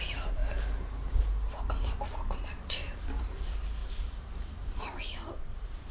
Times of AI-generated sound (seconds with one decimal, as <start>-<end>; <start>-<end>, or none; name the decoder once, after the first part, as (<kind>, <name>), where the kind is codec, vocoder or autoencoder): 0.0-0.4 (vocoder, BigVGAN v2); 1.6-5.9